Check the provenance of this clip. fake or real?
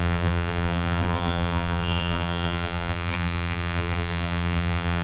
fake